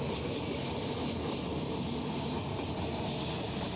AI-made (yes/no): no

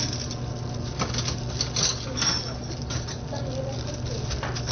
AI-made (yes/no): no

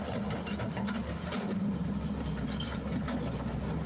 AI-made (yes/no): no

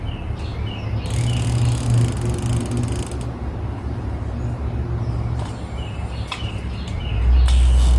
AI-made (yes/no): no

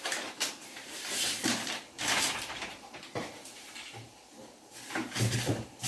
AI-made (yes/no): yes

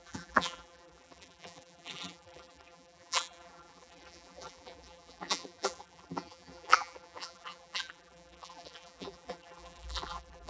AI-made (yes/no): yes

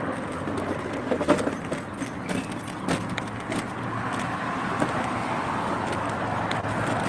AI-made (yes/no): no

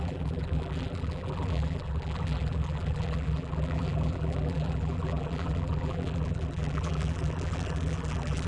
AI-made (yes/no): yes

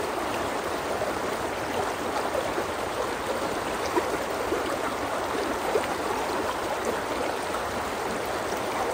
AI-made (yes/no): yes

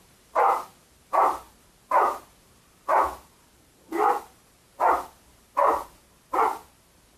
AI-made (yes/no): yes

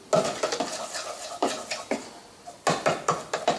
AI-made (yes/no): no